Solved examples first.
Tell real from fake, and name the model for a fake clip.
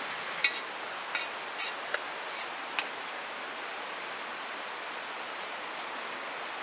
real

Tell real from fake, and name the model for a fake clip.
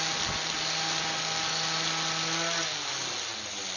real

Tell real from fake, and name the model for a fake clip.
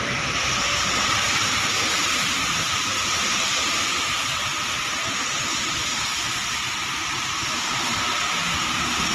fake, vocoder, BigVGAN v2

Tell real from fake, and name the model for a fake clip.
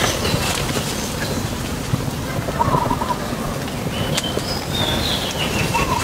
real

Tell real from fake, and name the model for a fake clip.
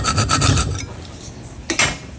real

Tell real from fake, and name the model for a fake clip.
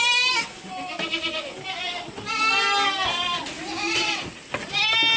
real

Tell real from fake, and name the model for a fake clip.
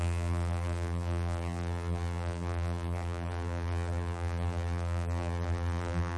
fake, vocoder, BigVGAN v2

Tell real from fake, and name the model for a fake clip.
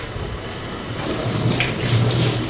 fake, vocoder, BigVGAN v2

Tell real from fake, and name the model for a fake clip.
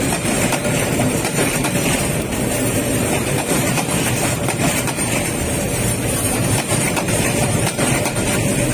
fake, vocoder, BigVGAN v2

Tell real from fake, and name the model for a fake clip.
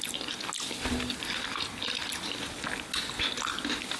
real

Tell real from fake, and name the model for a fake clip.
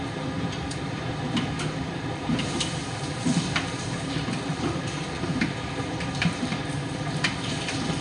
fake, vocoder, BigVGAN v2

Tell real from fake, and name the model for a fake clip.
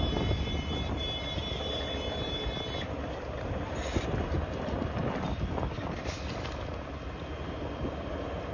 fake, vocoder, BigVGAN v2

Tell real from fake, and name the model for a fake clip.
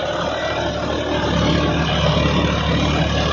real